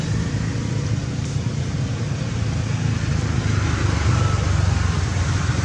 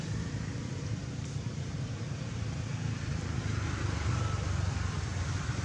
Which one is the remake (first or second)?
second